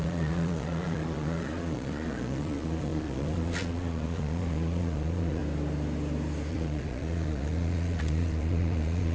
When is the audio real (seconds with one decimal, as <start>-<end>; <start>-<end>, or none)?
5.4-6.5